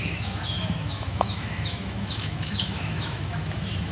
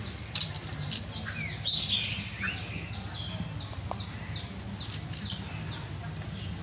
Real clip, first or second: second